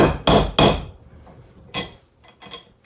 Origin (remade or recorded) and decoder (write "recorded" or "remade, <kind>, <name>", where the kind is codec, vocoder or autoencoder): recorded